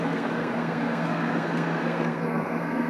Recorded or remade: remade